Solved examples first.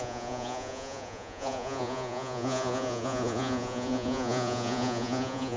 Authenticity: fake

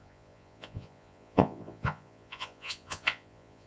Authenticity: fake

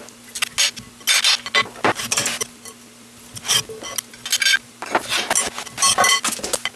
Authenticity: real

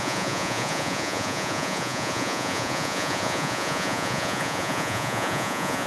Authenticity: fake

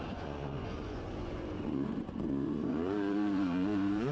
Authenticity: fake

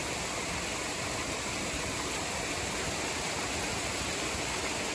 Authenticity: real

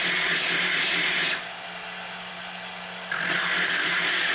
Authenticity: real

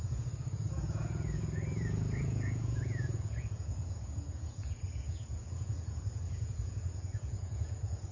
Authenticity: fake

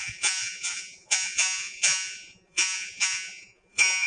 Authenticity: fake